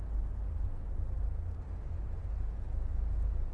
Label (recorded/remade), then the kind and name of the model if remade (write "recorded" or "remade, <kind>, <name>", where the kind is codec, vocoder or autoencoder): recorded